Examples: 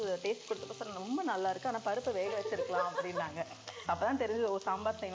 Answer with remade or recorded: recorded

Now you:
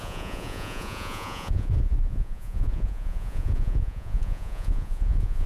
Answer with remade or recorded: remade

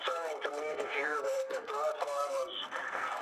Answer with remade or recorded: remade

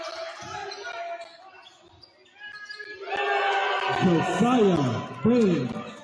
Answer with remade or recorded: recorded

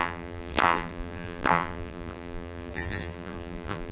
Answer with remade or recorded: remade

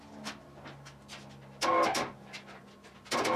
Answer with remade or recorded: recorded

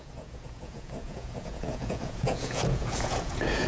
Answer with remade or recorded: remade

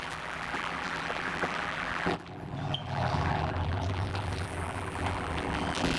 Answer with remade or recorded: remade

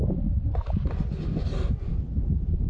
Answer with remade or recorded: recorded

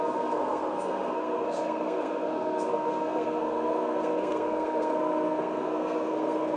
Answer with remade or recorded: remade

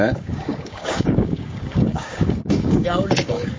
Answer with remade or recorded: remade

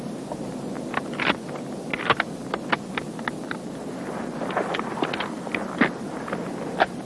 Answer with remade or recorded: recorded